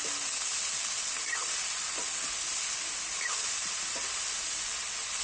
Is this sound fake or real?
real